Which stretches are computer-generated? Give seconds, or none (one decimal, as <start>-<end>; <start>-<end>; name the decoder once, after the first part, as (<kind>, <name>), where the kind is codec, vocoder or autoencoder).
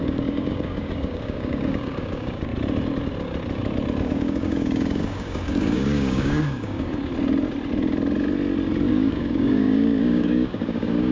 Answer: 0.0-2.5 (codec, DAC); 4.0-7.1; 8.9-11.1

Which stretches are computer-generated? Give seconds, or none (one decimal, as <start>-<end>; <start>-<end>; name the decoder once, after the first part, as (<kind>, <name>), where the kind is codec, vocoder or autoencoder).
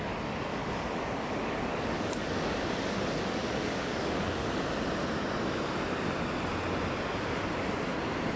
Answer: 0.5-4.4 (codec, DAC)